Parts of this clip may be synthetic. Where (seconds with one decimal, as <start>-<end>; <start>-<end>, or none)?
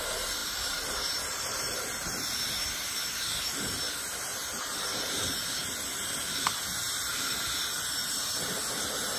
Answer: none